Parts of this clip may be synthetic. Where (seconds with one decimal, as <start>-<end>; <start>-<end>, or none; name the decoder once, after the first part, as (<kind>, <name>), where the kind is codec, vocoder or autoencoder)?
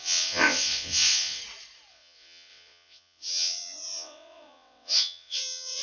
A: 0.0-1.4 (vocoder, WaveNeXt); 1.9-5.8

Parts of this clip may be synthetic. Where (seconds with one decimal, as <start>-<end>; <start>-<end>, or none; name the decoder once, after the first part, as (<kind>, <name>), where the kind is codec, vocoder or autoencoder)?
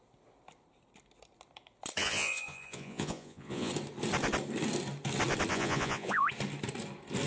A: 2.0-3.7 (vocoder, Vocos); 5.5-6.3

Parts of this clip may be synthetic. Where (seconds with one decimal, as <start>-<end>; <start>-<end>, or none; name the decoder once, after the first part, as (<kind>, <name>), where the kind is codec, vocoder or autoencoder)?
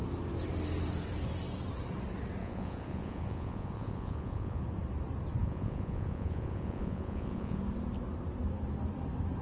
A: 2.4-4.6 (vocoder, Vocos); 5.4-7.6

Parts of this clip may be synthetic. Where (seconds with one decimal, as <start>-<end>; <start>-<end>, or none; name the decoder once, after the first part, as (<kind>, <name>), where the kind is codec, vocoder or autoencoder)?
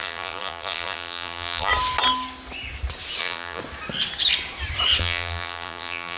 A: 0.0-1.7 (vocoder, BigVGAN v2); 3.2-3.6; 5.0-6.2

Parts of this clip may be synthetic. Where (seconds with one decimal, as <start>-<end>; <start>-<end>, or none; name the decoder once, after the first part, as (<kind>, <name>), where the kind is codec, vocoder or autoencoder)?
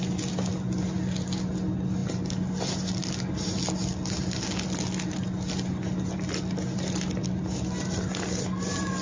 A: none